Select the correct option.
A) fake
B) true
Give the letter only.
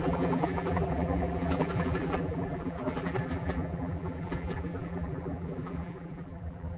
A